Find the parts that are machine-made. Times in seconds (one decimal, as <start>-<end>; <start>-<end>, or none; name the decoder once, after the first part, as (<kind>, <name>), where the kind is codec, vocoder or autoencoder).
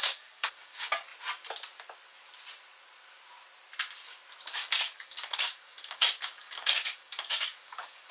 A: 0.0-1.1 (codec, DAC); 4.4-8.1